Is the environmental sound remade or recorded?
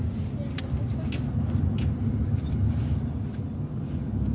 recorded